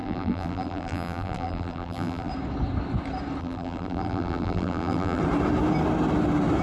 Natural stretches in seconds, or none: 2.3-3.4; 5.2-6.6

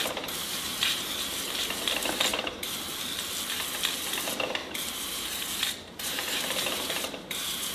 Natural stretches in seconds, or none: 0.0-0.4; 1.2-4.6

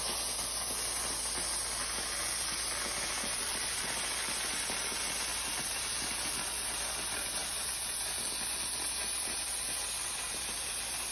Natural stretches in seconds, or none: 0.0-3.4; 4.0-5.3; 6.7-7.4